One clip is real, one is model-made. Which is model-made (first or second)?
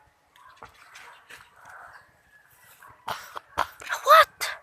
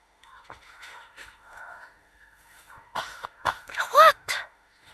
second